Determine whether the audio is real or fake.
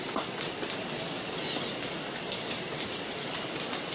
fake